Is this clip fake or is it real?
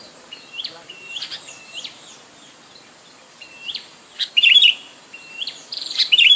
fake